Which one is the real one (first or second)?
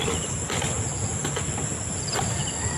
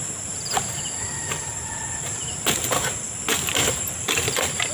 first